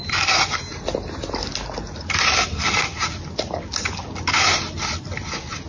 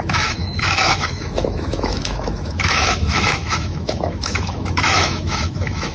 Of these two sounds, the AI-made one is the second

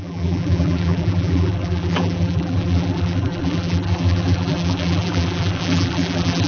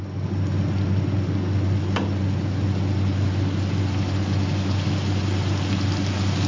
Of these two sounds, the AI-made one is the first